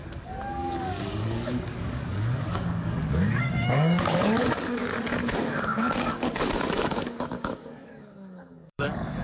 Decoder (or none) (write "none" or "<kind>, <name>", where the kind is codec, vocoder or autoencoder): codec, DAC